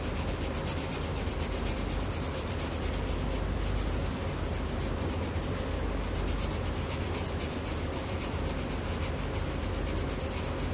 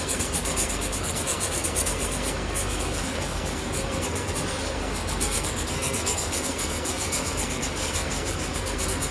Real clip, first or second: first